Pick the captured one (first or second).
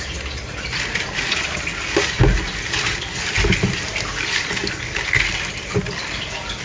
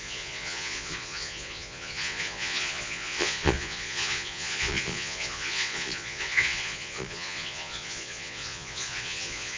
first